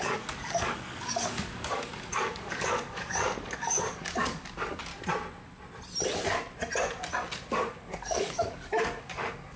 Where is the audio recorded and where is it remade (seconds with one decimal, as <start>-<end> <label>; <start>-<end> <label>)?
0.0-4.9 remade; 4.9-7.5 recorded; 7.5-9.6 remade